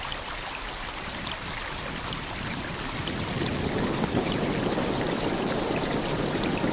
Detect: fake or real real